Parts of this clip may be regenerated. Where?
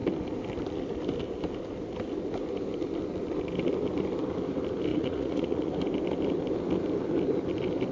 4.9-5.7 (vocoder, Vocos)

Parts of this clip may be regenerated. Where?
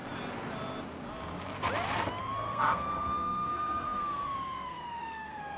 2.2-5.6 (codec, SNAC)